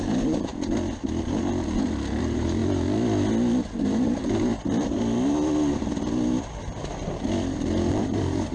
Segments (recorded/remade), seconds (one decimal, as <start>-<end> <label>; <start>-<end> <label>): 0.0-0.5 remade; 0.5-2.2 recorded; 2.2-2.6 remade; 2.6-3.8 recorded; 3.8-4.5 remade; 4.5-7.9 recorded; 7.9-8.5 remade